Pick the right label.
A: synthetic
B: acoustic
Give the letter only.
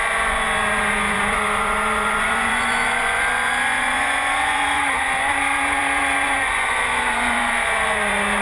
A